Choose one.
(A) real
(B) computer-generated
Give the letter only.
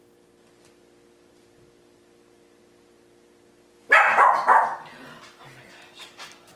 A